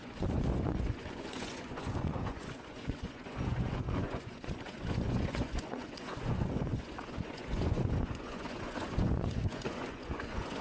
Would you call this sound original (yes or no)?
no